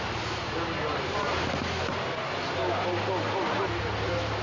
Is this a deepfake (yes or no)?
no